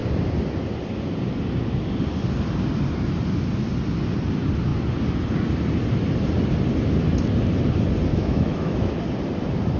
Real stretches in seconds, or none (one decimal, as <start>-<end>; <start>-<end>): 0.0-8.1; 8.9-9.8